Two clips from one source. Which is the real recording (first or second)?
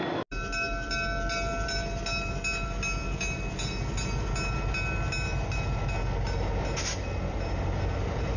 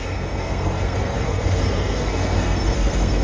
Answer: first